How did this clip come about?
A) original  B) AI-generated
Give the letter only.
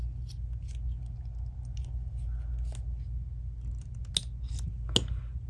A